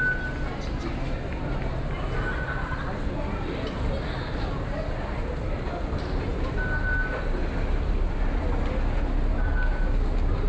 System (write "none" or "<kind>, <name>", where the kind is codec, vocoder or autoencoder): none